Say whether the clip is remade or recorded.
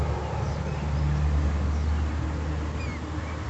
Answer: recorded